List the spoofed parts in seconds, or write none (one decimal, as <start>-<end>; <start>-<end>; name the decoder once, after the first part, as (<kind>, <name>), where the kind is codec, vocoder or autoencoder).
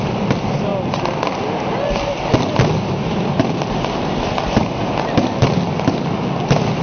none